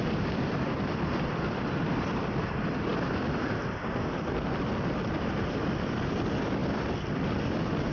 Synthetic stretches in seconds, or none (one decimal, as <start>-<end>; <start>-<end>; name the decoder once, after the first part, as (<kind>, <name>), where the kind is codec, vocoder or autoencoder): 0.0-2.9 (vocoder, BigVGAN v2); 5.1-7.9